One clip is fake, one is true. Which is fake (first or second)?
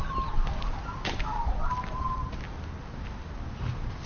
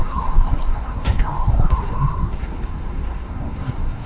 second